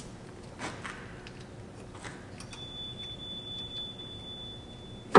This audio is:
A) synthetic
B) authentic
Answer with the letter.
B